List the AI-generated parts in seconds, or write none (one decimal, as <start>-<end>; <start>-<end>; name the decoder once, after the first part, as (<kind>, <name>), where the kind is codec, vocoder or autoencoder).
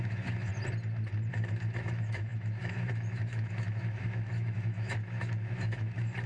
0.0-0.5 (autoencoder, DAC-VAE); 1.3-6.3